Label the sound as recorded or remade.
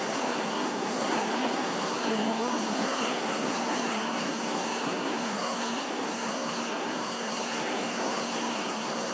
remade